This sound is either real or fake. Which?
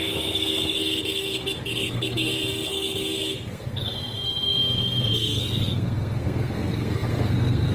fake